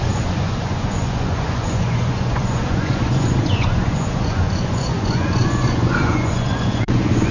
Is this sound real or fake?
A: fake